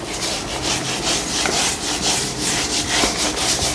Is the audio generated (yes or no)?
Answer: no